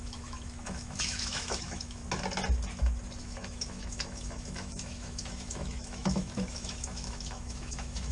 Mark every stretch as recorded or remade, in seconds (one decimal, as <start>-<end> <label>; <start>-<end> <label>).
0.0-2.0 remade; 2.0-3.2 recorded; 3.2-8.1 remade